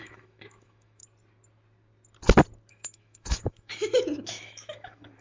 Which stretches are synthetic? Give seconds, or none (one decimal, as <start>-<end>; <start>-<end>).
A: 0.0-1.0; 2.7-5.2